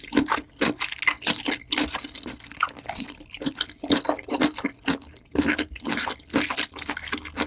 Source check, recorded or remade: recorded